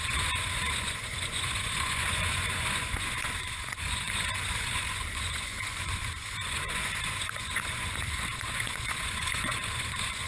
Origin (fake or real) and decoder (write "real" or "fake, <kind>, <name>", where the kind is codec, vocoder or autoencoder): fake, vocoder, Vocos